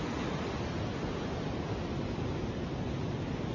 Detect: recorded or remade recorded